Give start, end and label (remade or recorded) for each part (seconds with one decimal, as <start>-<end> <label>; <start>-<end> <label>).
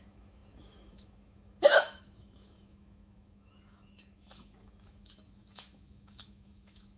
0.0-7.0 remade